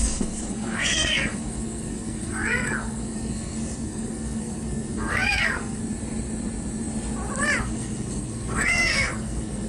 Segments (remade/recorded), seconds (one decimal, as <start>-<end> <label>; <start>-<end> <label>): 0.0-5.8 remade; 5.8-7.6 recorded; 7.6-9.7 remade